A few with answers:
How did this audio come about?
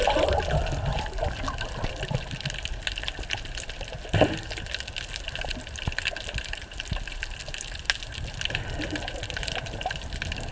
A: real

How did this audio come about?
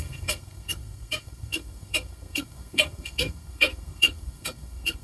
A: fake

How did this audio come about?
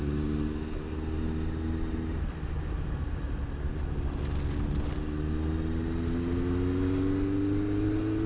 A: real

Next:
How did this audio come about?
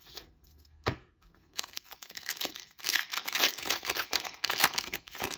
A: fake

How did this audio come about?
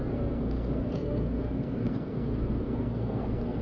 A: fake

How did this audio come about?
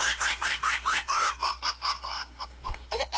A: fake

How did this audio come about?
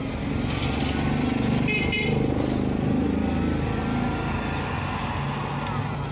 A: real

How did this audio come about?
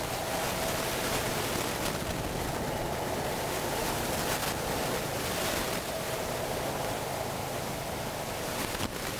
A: real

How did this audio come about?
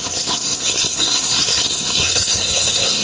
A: fake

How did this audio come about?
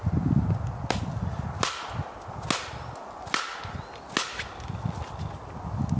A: real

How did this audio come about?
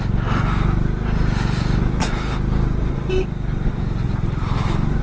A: real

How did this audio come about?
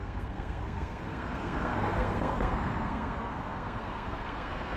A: fake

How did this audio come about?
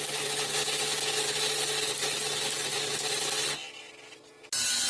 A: real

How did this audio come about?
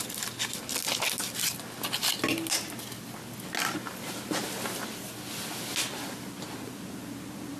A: real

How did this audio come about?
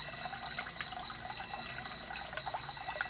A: real